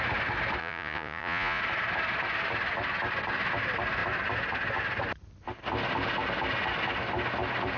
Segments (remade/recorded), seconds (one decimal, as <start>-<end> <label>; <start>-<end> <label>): 0.0-0.6 recorded; 0.6-1.6 remade; 1.6-7.8 recorded